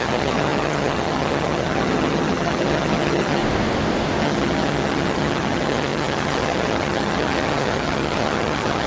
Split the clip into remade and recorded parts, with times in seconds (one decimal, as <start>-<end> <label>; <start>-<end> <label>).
0.0-3.4 remade; 3.4-4.2 recorded; 4.2-8.9 remade